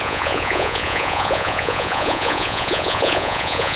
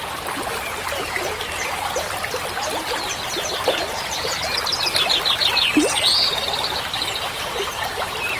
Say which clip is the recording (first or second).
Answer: second